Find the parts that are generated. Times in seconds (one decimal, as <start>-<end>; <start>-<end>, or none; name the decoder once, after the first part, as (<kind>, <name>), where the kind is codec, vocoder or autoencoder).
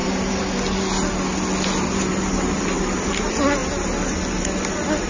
none